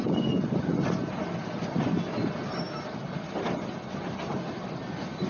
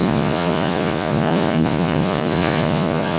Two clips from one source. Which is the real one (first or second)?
first